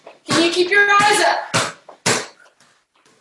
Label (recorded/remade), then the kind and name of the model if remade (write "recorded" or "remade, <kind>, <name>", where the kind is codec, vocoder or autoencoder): recorded